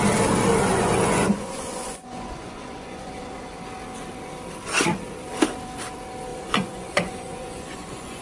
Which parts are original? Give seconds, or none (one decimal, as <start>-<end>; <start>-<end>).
0.0-0.7; 3.2-6.3